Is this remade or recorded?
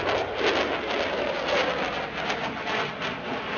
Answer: recorded